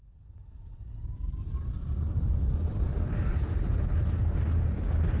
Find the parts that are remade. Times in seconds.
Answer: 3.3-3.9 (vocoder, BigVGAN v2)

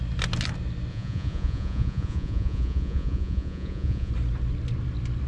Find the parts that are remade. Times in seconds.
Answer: 0.9-4.1 (vocoder, Vocos)

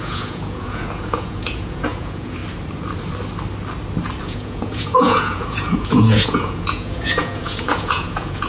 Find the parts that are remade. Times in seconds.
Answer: 0.0-2.4 (vocoder, Vocos); 4.2-8.5

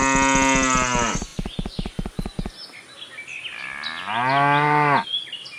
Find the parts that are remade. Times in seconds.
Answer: none

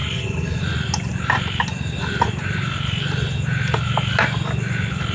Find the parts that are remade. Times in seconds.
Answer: 0.0-0.6 (codec, HILCodec)

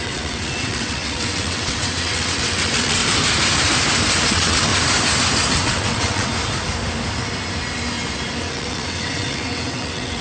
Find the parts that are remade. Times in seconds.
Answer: 0.0-3.0 (vocoder, WaveNeXt); 4.3-4.7; 5.5-6.3; 8.4-10.2

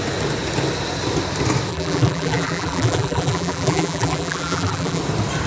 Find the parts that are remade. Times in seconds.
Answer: 1.7-5.0 (vocoder, BigVGAN v2)